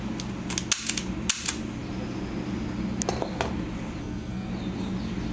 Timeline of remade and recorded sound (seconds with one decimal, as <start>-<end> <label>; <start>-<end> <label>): 0.0-4.0 recorded; 4.0-4.5 remade; 4.5-5.3 recorded

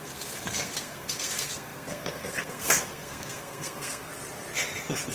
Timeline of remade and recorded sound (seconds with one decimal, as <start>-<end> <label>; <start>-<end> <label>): 0.0-4.1 remade; 4.1-5.1 recorded

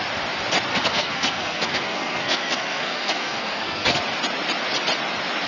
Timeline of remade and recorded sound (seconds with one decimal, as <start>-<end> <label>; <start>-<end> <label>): 0.0-0.7 recorded; 0.7-4.0 remade; 4.0-5.5 recorded

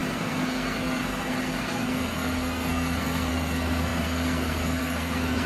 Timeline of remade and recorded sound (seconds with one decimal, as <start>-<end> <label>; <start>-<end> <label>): 0.0-5.5 remade

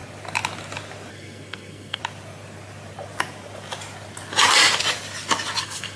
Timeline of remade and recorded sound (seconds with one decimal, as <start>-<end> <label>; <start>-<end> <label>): 0.0-1.1 recorded; 1.1-2.0 remade; 2.0-5.6 recorded; 5.6-6.0 remade

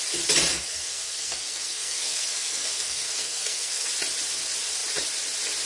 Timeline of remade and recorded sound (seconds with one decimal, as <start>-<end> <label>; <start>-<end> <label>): 0.0-0.5 recorded; 0.5-3.9 remade; 3.9-5.7 recorded